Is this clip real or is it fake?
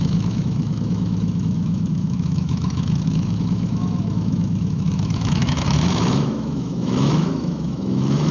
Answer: fake